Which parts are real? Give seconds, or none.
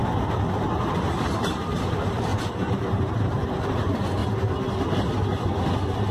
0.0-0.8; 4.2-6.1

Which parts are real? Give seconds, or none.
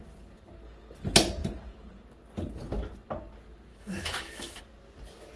0.0-3.7; 4.6-5.4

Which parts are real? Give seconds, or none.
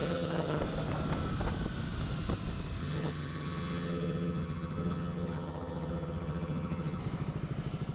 0.6-2.8; 7.0-7.9